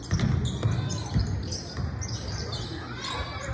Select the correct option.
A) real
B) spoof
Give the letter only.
A